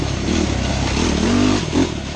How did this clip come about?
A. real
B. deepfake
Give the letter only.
A